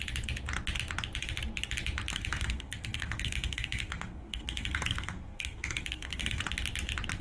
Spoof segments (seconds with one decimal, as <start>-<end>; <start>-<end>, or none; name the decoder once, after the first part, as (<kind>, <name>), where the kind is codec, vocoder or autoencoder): 2.1-6.4 (codec, SNAC)